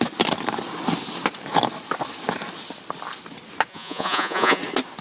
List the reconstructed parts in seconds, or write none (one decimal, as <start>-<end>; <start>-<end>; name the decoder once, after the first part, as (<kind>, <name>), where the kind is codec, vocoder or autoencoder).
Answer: 3.7-4.6 (vocoder, Vocos)